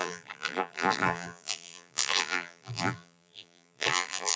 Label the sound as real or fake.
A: fake